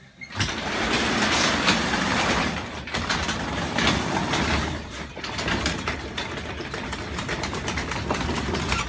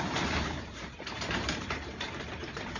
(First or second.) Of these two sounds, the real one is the first